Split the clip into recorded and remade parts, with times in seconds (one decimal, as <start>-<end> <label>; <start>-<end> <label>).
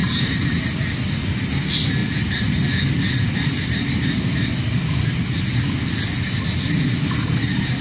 0.0-7.8 recorded